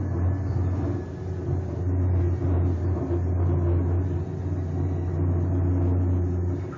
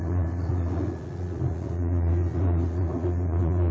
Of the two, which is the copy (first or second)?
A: second